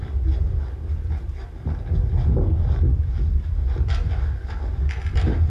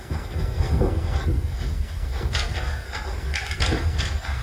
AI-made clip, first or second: second